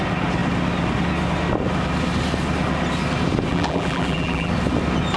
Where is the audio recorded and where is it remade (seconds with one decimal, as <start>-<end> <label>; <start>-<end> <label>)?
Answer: 0.0-3.5 recorded; 3.5-4.5 remade; 4.5-5.2 recorded